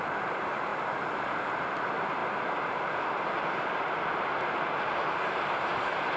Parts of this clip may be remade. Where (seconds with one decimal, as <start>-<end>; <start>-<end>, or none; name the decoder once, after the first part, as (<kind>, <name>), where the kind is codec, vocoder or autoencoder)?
0.0-0.7 (vocoder, BigVGAN v2); 1.4-2.2; 4.9-6.2